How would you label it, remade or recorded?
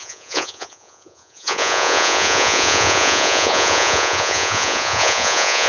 remade